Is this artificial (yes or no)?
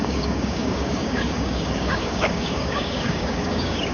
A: yes